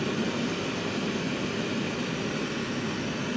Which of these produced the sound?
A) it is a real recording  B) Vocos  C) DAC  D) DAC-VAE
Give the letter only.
A